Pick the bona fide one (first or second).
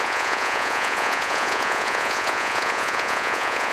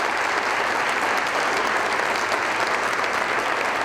second